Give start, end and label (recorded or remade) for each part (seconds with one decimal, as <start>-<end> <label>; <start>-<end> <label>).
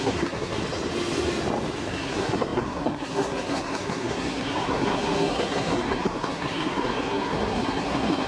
0.0-0.6 remade; 0.6-1.9 recorded; 1.9-8.3 remade